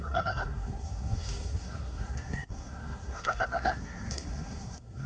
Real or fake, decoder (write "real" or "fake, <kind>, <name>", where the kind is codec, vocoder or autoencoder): fake, codec, SNAC